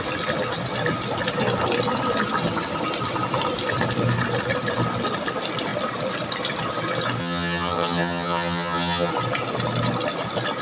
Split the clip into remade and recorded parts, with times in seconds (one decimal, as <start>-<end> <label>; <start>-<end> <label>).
0.0-7.2 recorded; 7.2-9.1 remade; 9.1-10.6 recorded